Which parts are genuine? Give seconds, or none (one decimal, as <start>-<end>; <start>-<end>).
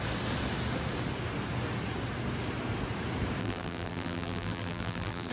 0.0-3.4